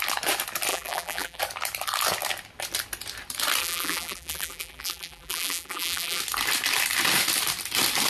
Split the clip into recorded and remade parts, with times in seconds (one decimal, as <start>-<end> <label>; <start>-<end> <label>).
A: 0.0-0.7 recorded; 0.7-1.4 remade; 1.4-3.6 recorded; 3.6-6.2 remade; 6.2-8.1 recorded